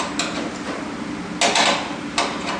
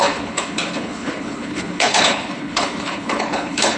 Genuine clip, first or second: first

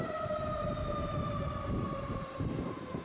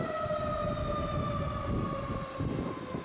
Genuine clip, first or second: second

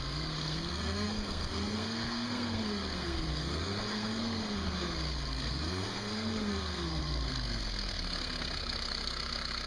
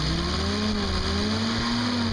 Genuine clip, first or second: second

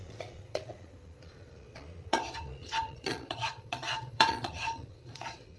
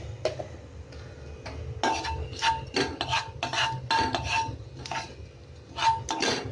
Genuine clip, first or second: second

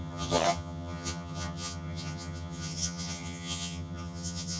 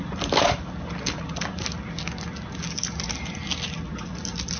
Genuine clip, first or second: second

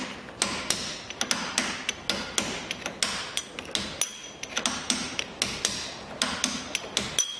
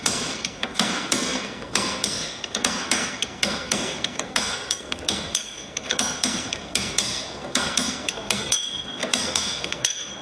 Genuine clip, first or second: first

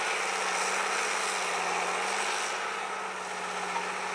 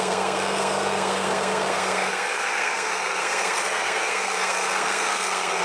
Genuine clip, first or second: first